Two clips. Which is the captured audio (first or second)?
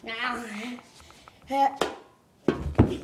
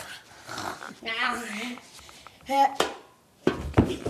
first